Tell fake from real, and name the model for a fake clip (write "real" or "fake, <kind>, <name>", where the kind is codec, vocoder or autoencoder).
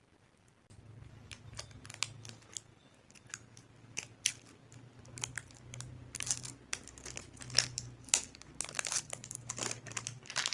real